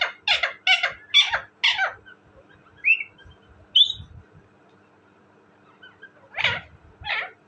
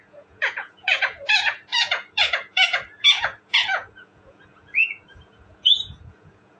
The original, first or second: first